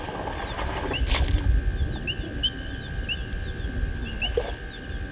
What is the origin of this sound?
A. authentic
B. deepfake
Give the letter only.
A